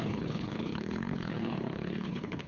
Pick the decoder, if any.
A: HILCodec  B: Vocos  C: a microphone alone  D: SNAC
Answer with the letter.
A